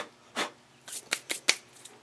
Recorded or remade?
recorded